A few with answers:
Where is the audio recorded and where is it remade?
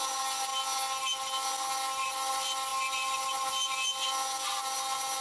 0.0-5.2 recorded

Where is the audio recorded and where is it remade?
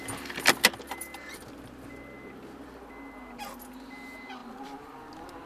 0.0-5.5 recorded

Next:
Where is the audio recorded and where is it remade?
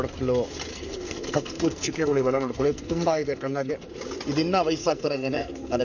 0.0-0.7 recorded; 0.7-3.7 remade; 3.7-4.8 recorded; 4.8-5.8 remade